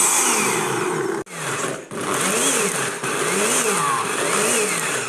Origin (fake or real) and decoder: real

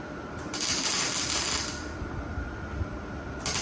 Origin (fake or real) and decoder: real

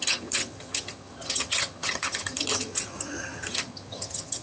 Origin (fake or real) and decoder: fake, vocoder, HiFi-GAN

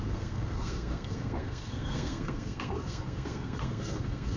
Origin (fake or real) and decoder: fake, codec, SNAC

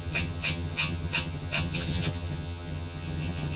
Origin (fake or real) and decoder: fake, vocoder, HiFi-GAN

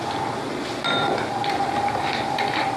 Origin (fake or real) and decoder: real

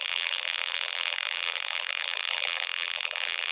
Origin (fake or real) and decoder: fake, vocoder, BigVGAN v2